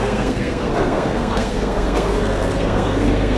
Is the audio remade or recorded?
remade